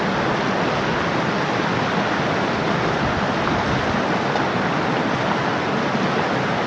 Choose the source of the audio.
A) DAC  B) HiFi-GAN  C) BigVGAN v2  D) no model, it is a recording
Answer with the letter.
D